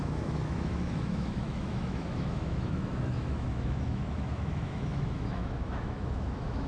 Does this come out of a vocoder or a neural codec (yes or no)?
yes